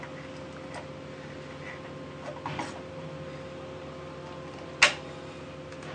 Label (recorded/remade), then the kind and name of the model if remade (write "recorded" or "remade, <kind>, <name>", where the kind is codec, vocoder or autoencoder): recorded